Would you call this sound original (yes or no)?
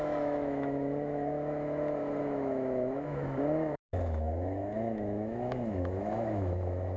no